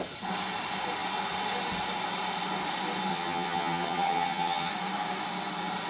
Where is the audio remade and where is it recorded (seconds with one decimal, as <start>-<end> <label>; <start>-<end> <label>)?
0.0-3.1 recorded; 3.1-4.7 remade; 4.7-5.9 recorded